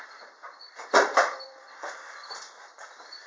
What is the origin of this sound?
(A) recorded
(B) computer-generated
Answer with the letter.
B